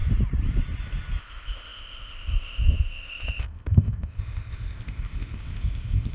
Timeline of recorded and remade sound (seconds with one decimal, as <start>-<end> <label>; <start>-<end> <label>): 0.0-1.2 recorded; 1.2-6.1 remade